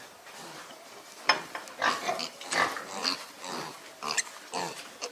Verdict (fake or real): real